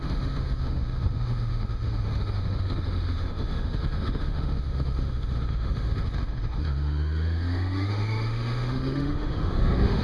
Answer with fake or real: fake